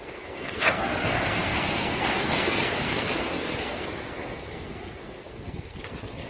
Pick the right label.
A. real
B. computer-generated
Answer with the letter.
B